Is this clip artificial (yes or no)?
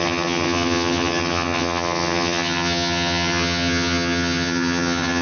yes